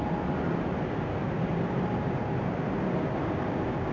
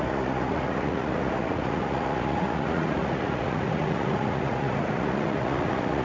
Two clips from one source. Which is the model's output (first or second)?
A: second